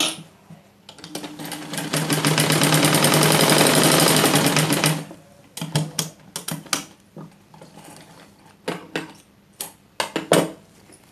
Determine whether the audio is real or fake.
real